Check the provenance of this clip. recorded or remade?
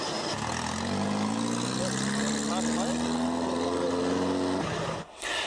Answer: recorded